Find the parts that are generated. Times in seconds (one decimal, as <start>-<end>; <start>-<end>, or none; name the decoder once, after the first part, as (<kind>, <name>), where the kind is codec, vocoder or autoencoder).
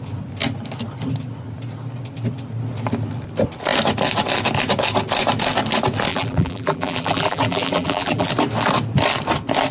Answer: 6.1-8.3 (vocoder, BigVGAN v2)